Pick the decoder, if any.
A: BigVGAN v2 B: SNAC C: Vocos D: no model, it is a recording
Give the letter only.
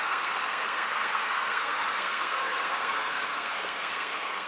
B